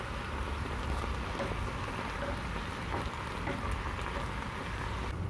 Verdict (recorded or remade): recorded